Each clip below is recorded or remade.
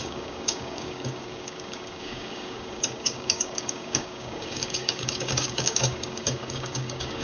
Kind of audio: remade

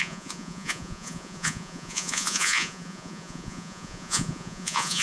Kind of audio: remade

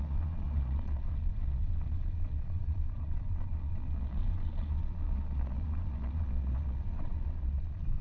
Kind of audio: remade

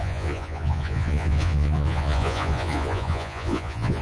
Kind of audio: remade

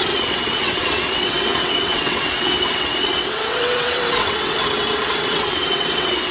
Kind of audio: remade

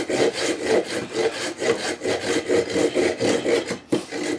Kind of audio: recorded